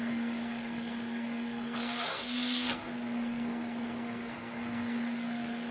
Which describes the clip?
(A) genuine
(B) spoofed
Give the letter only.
B